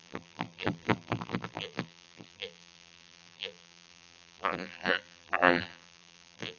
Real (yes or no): no